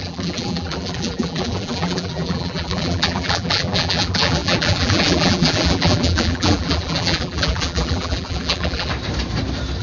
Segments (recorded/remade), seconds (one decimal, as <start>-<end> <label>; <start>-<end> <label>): 0.0-8.9 remade; 8.9-9.8 recorded